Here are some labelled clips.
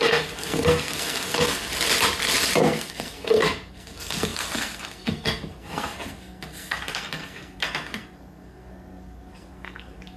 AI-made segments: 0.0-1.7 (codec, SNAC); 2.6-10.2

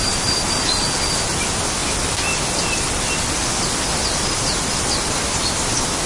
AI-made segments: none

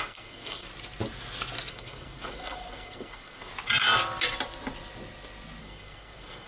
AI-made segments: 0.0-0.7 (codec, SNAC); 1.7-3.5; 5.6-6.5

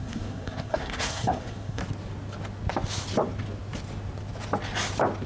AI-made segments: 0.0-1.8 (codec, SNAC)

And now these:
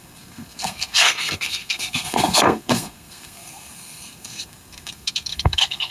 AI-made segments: 0.0-5.9 (codec, SNAC)